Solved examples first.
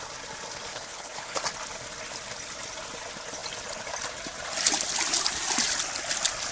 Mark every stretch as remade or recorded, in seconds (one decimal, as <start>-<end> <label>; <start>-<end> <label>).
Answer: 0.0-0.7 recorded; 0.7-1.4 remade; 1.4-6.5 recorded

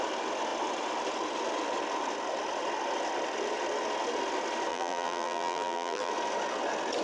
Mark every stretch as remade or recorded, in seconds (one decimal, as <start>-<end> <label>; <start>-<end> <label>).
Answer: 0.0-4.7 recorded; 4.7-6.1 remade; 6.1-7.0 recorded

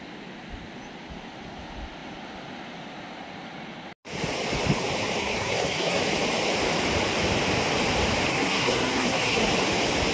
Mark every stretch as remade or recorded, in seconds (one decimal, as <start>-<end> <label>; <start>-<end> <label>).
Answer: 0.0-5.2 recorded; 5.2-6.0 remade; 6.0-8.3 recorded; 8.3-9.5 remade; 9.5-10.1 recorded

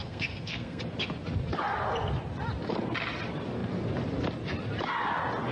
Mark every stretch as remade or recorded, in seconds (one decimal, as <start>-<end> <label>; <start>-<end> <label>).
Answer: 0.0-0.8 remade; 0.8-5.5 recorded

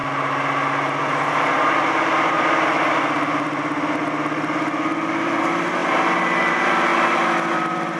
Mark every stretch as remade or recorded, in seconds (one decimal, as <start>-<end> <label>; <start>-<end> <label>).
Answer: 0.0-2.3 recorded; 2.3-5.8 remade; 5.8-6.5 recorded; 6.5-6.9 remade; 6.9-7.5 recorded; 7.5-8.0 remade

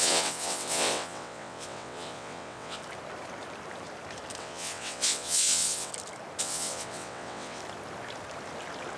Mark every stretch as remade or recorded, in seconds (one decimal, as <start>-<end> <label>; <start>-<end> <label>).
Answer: 0.0-2.8 remade; 2.8-4.4 recorded; 4.4-5.9 remade; 5.9-6.4 recorded; 6.4-7.6 remade; 7.6-9.0 recorded

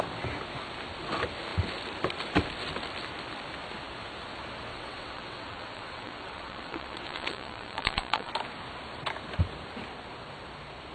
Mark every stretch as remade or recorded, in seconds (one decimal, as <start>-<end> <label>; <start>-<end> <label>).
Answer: 0.0-4.7 recorded; 4.7-8.3 remade; 8.3-10.9 recorded

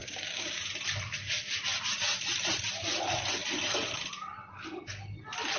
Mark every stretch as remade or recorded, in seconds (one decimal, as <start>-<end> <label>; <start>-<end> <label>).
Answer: 0.0-0.6 remade; 0.6-5.6 recorded